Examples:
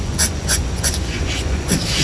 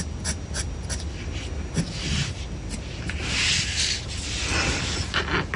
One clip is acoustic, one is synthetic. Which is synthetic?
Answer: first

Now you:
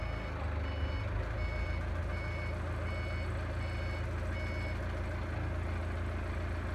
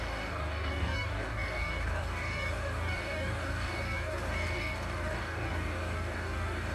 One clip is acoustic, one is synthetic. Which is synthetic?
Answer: second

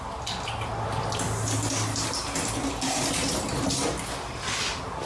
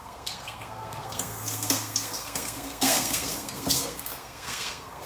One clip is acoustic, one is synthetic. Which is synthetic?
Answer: second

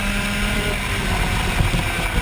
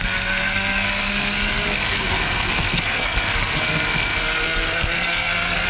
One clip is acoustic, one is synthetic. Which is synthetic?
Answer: second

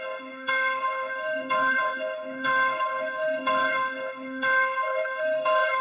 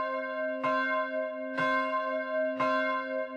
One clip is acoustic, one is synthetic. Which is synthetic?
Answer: first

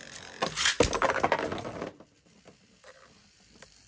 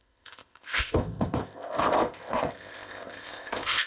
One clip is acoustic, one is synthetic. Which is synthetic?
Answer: second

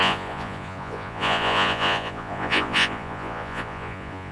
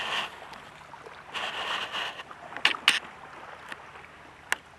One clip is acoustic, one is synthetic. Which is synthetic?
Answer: first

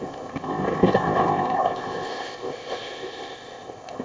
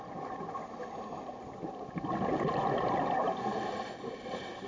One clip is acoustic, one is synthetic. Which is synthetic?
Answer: first